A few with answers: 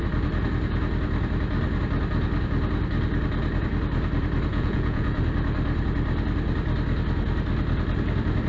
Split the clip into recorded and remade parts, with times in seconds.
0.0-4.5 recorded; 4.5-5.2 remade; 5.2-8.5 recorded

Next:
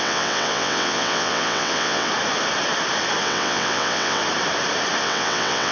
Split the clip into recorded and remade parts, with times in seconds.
0.0-2.1 remade; 2.1-3.2 recorded; 3.2-4.2 remade; 4.2-5.0 recorded; 5.0-5.7 remade

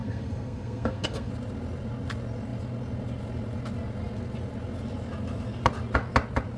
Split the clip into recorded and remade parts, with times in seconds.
0.0-1.3 remade; 1.3-6.6 recorded

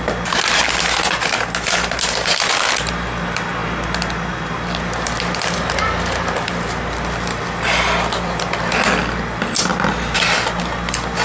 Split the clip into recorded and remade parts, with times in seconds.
0.0-11.2 recorded

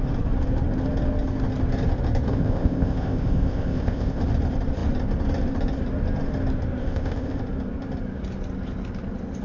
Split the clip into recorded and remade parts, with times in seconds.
0.0-2.3 recorded; 2.3-4.2 remade; 4.2-6.8 recorded; 6.8-7.4 remade; 7.4-9.4 recorded

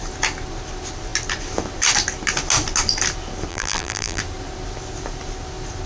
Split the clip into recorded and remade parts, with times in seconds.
0.0-3.5 recorded; 3.5-4.2 remade; 4.2-5.9 recorded